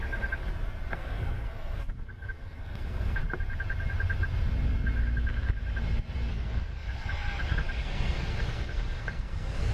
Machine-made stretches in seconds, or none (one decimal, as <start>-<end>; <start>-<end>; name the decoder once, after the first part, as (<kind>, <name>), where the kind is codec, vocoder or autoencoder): 0.0-0.4 (codec, SNAC); 0.9-3.2; 6.3-9.7